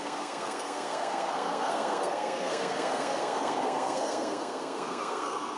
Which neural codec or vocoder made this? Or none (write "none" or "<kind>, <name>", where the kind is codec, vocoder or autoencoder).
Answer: codec, SNAC